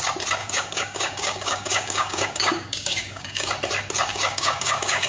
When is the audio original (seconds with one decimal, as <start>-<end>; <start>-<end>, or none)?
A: 0.0-0.4; 3.5-4.1